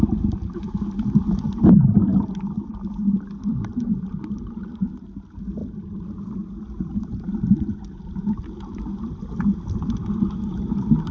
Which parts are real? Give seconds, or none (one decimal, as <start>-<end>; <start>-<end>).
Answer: 0.0-11.1